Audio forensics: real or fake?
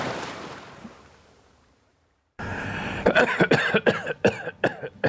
fake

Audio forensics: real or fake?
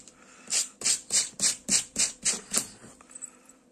fake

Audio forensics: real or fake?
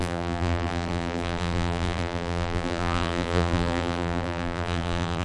fake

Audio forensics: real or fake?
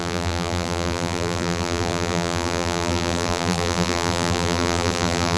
fake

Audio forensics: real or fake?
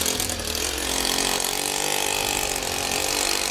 real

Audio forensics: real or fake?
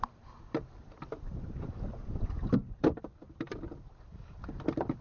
fake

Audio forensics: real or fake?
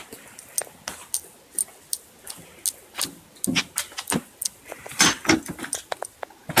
real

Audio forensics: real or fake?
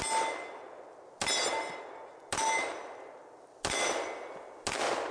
real